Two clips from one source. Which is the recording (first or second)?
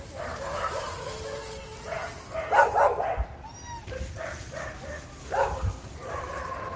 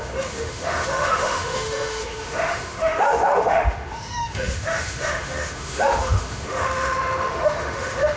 first